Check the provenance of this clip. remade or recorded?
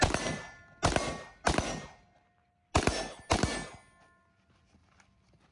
recorded